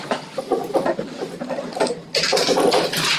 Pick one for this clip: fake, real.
real